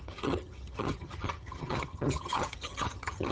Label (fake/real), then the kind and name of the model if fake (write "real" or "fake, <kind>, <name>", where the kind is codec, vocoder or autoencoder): fake, vocoder, HiFi-GAN